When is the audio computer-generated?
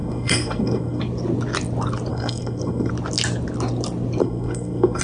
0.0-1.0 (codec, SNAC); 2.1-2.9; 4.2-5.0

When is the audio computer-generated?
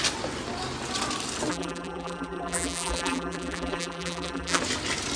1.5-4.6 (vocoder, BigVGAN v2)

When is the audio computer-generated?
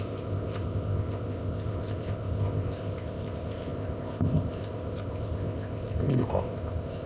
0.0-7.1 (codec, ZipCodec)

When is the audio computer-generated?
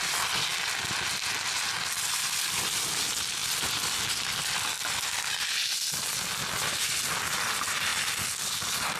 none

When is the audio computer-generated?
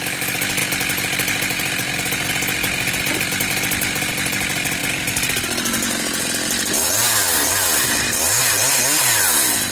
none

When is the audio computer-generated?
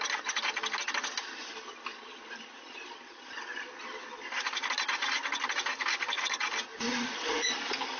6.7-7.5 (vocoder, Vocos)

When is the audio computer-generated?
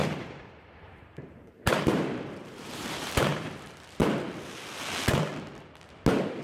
0.0-3.5 (vocoder, BigVGAN v2)